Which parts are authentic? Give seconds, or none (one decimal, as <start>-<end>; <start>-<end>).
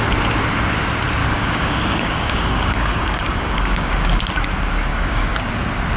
0.0-1.2; 4.2-4.9; 5.5-6.0